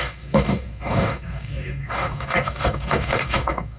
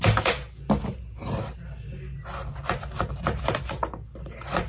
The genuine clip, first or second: second